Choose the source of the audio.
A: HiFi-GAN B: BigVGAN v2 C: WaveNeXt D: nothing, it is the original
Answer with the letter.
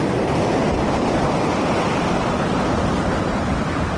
D